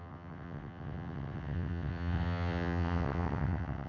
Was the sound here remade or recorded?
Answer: remade